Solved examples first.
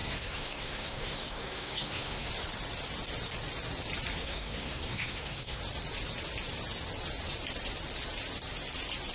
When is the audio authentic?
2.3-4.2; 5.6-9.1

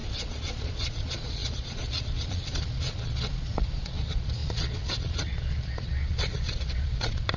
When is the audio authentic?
none

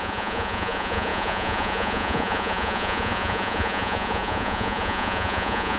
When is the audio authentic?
none

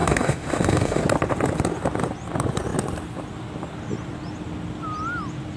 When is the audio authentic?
1.0-5.6

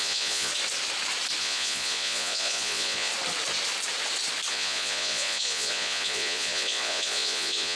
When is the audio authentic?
0.5-1.4; 3.1-4.5